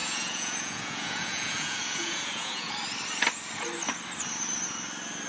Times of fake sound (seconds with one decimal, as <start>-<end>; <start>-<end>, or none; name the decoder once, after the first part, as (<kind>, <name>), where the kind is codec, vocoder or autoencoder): 0.0-2.7 (vocoder, Vocos)